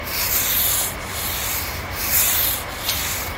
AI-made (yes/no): no